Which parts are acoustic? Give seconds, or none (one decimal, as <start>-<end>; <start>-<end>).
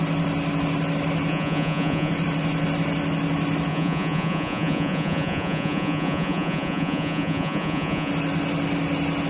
0.0-1.3; 2.1-3.7; 8.1-9.3